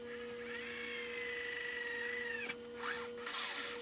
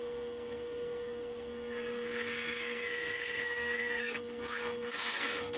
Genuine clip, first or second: first